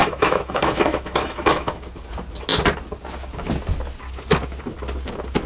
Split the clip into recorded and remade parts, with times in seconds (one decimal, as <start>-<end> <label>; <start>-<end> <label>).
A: 0.0-1.9 remade; 1.9-5.5 recorded